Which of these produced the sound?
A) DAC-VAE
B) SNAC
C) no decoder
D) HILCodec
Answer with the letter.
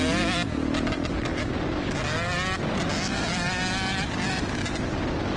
C